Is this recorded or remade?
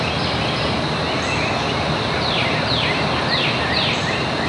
recorded